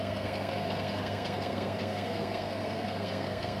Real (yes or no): no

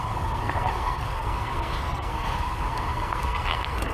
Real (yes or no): no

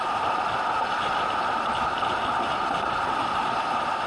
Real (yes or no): yes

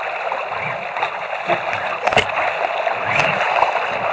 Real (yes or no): yes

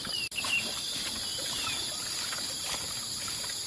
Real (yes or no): yes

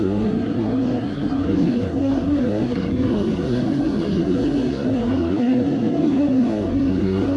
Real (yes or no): no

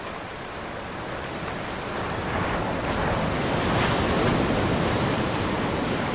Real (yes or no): yes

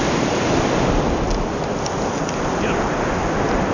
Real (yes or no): yes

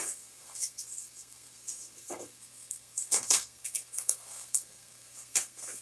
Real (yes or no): no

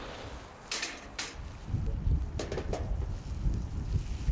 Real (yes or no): yes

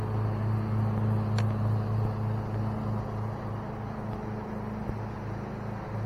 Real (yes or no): yes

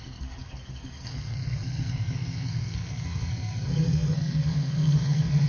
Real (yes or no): no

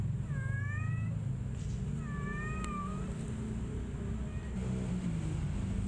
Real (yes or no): yes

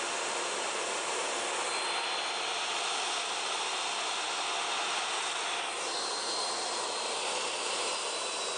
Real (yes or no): yes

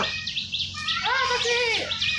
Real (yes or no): yes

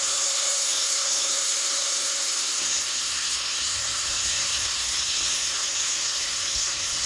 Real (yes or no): no